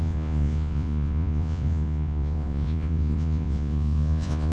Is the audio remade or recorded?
remade